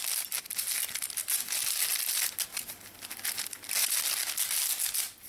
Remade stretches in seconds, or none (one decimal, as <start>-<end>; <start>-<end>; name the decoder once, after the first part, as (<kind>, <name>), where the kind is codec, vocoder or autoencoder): none